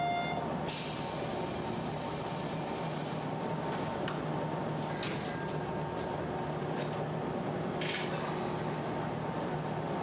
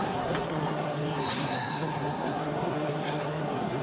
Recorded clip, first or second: first